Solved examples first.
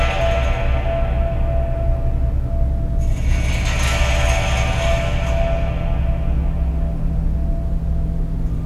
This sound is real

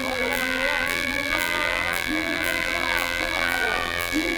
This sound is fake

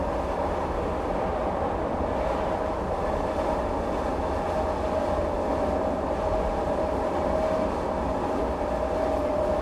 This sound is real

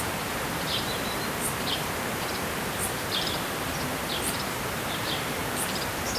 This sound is fake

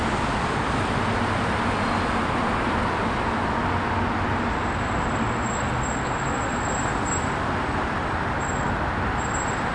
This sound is real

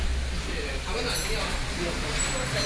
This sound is real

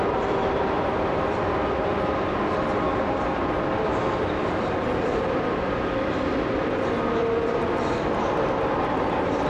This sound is real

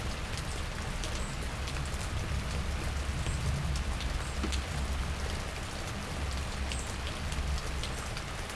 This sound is real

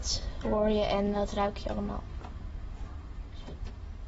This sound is real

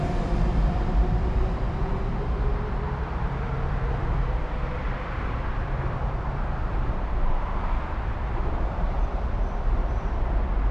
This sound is fake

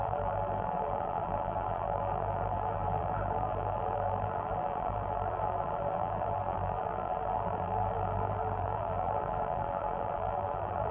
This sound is fake